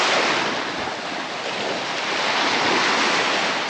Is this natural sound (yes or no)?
yes